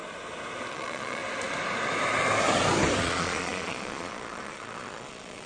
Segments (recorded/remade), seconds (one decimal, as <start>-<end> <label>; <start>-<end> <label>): 0.0-0.7 recorded; 0.7-1.2 remade; 1.2-3.0 recorded; 3.0-5.5 remade